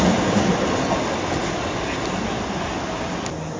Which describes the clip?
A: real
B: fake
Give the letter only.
A